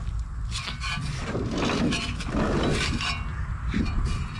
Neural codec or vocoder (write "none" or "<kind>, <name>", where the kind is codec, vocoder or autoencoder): none